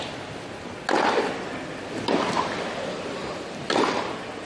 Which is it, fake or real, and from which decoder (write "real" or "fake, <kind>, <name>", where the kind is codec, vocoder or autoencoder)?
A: real